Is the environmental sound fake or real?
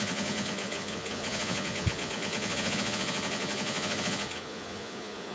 fake